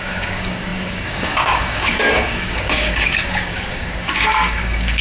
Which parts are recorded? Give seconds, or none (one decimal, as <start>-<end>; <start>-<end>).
none